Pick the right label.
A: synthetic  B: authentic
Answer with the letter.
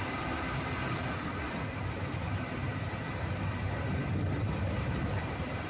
A